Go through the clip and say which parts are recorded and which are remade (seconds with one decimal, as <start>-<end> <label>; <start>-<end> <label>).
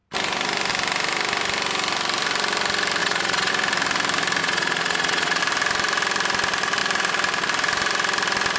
0.0-3.0 recorded; 3.0-3.5 remade; 3.5-4.4 recorded; 4.4-5.4 remade; 5.4-8.6 recorded